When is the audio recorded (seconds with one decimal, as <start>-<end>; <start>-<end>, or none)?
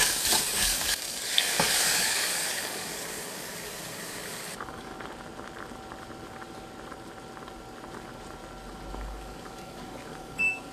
4.9-8.9